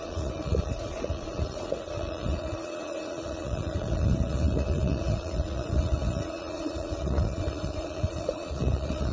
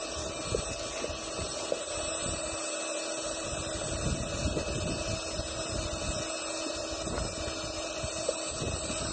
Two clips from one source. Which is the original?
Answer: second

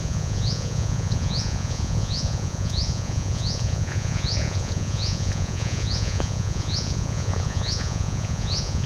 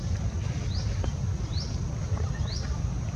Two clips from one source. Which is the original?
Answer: second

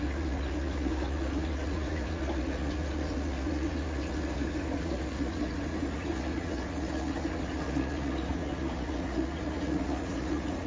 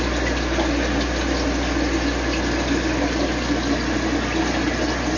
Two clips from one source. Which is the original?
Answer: second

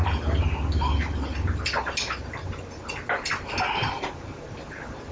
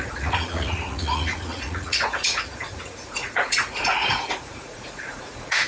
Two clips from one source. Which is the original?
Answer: first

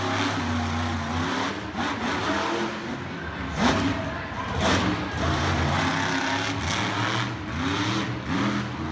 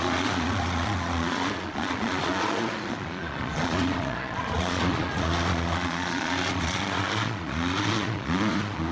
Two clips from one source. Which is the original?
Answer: first